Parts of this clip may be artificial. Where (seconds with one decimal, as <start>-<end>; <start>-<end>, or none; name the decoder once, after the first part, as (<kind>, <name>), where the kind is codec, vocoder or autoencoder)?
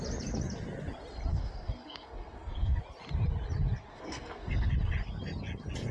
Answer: 1.3-2.8 (codec, SNAC); 3.9-4.7